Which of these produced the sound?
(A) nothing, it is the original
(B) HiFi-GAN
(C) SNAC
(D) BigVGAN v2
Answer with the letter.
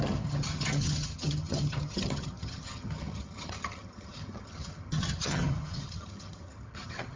B